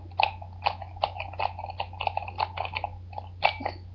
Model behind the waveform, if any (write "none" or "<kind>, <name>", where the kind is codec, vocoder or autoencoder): none